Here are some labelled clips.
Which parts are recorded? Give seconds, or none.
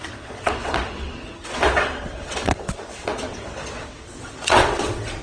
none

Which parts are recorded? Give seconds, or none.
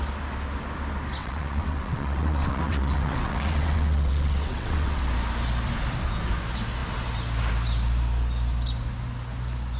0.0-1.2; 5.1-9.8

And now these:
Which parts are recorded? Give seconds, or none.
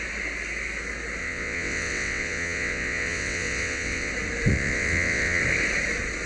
0.0-1.2; 4.1-4.5; 5.4-6.3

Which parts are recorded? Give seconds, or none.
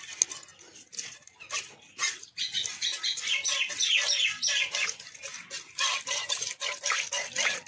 0.0-7.7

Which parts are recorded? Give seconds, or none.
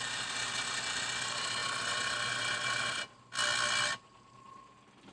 0.0-5.1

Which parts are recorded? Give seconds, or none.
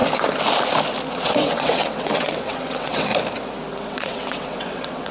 0.0-1.1; 3.1-3.7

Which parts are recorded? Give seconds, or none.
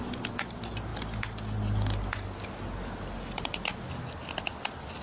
0.0-5.0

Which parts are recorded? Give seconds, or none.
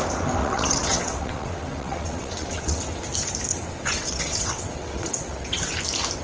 0.0-0.4; 2.8-3.5; 5.7-6.2